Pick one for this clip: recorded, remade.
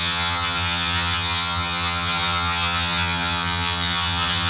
remade